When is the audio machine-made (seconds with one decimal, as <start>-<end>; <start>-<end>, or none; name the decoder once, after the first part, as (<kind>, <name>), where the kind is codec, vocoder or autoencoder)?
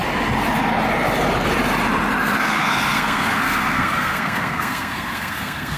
2.4-5.8 (codec, SNAC)